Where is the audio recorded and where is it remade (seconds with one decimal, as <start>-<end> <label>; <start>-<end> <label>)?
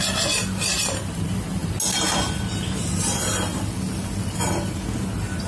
0.0-5.5 recorded